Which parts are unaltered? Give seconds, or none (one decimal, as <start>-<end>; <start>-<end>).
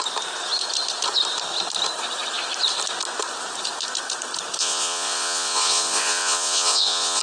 0.0-4.6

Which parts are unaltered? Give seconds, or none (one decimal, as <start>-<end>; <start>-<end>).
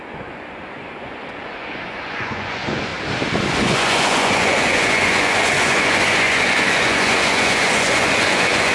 2.9-3.5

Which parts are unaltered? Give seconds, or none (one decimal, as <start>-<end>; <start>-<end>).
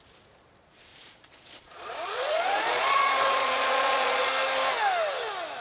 0.0-0.9; 4.3-5.6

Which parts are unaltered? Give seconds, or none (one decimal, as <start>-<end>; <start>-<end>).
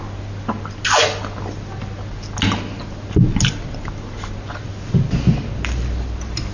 0.0-6.5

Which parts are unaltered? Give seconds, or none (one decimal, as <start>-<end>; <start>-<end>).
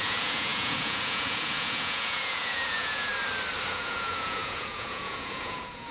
3.1-3.7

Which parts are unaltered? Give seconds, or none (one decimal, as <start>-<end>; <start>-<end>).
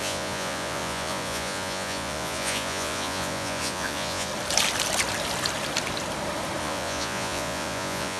4.3-6.6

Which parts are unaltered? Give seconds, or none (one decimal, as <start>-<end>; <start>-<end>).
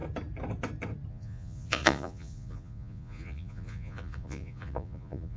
0.0-1.1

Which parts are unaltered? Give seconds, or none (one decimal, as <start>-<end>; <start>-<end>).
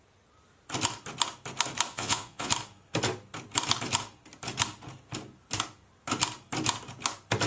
0.0-1.9; 2.5-7.5